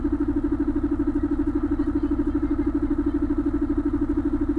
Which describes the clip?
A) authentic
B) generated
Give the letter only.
A